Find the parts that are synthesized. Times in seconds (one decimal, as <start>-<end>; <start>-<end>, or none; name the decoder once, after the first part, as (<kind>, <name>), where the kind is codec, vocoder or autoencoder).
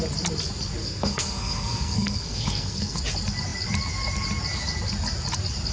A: 0.8-3.0 (codec, SNAC)